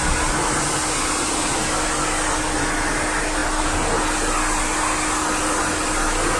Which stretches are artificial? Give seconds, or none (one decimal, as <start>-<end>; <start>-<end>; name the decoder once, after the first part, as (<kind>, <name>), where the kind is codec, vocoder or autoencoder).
none